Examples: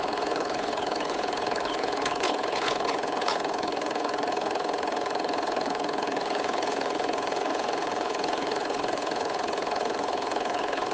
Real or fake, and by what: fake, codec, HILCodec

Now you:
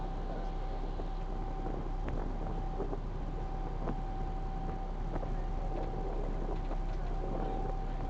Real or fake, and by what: real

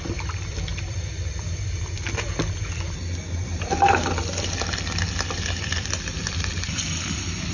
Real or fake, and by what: fake, vocoder, BigVGAN v2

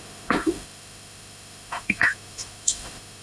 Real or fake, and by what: fake, autoencoder, DAC-VAE